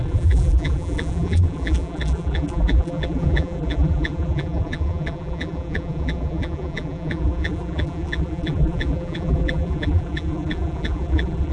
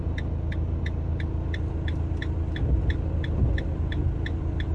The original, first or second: second